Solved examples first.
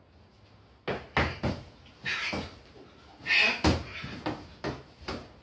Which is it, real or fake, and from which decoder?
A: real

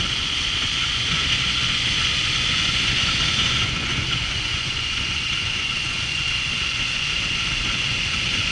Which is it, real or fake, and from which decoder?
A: fake, vocoder, Vocos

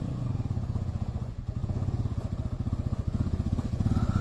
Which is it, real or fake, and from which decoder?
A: fake, vocoder, Vocos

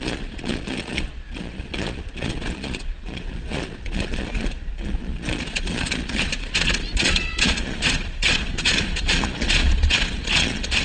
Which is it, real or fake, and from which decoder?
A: fake, vocoder, Vocos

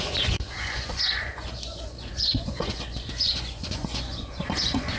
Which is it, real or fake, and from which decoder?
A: fake, vocoder, Vocos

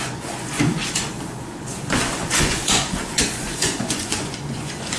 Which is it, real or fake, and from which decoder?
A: fake, vocoder, Vocos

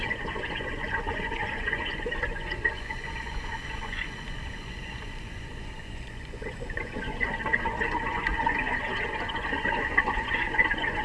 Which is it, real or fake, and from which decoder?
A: fake, vocoder, Vocos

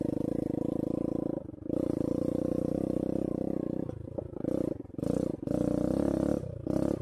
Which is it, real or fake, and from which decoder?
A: real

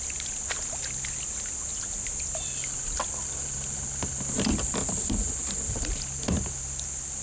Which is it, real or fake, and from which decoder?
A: real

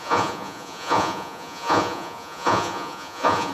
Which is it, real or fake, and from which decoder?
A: fake, vocoder, Vocos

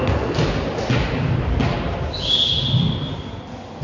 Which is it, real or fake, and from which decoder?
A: real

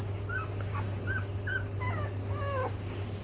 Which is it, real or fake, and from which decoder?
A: real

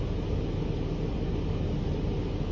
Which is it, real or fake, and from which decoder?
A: real